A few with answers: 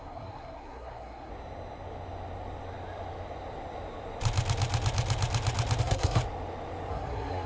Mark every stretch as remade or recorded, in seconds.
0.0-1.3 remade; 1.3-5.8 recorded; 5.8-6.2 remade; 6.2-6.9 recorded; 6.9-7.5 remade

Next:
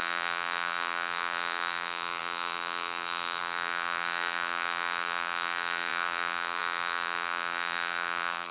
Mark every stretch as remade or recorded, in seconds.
0.0-8.5 remade

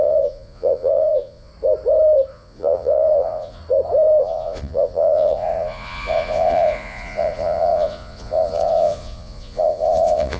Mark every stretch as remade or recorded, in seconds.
0.0-1.5 remade; 1.5-2.3 recorded; 2.3-3.6 remade; 3.6-4.2 recorded; 4.2-10.4 remade

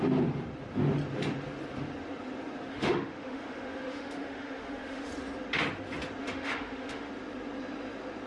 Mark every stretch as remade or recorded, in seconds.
0.0-2.7 recorded; 2.7-5.1 remade; 5.1-6.2 recorded; 6.2-7.1 remade; 7.1-8.3 recorded

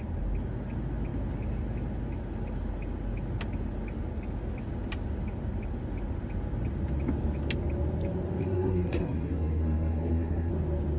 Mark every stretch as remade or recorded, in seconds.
0.0-8.4 recorded; 8.4-10.5 remade; 10.5-11.0 recorded

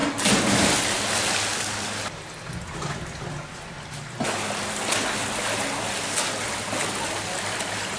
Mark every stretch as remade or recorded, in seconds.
0.0-8.0 recorded

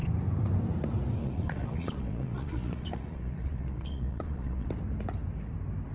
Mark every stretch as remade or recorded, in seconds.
0.0-1.2 recorded; 1.2-4.7 remade; 4.7-5.9 recorded